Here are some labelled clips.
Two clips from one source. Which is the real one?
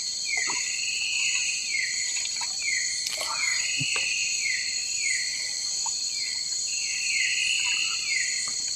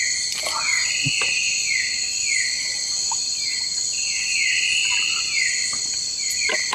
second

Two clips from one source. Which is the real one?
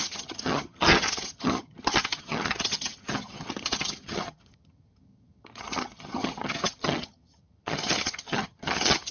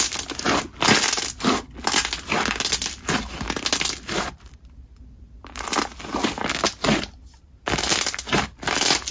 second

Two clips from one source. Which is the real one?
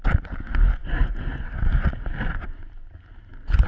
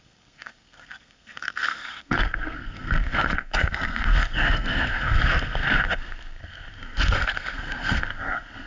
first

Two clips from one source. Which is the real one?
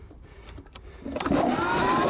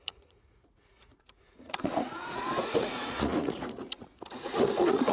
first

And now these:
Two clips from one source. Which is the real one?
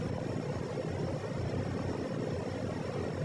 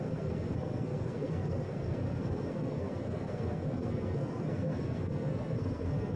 first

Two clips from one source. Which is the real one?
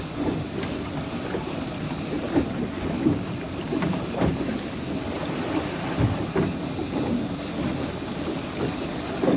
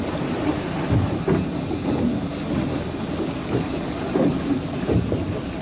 second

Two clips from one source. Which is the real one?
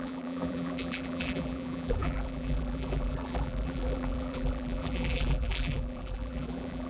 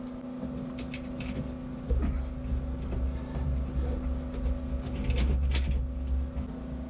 second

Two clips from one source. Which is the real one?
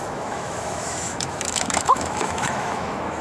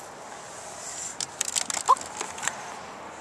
second